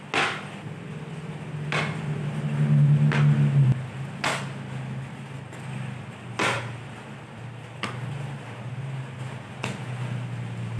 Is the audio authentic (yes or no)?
yes